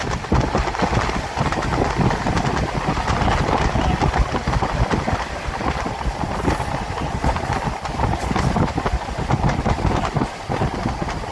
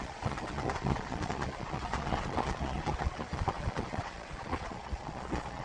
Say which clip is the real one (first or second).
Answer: first